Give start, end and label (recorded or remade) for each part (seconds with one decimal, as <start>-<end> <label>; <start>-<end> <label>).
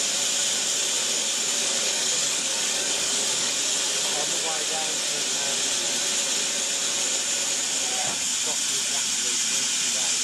0.0-1.6 recorded; 1.6-3.5 remade; 3.5-10.2 recorded